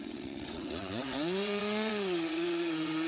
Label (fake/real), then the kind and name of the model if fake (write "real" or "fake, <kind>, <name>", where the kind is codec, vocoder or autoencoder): fake, vocoder, WaveNeXt